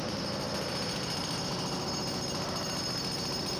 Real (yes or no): yes